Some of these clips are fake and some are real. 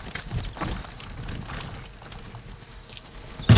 real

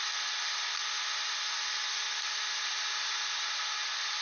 real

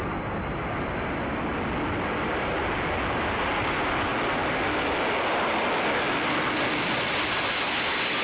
real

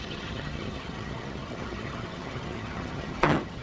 fake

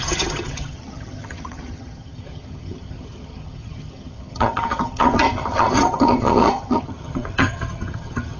fake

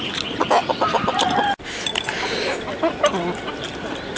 real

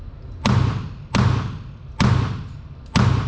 real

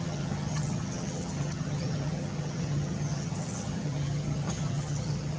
fake